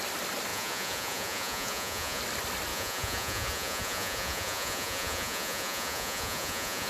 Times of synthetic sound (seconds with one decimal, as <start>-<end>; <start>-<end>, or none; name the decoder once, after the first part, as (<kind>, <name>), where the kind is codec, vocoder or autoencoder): 0.5-2.2 (vocoder, Vocos); 2.7-6.9